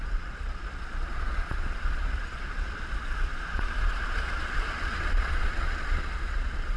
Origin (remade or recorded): remade